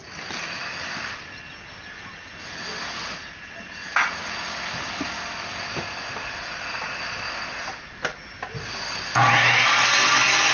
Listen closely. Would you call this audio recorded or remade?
recorded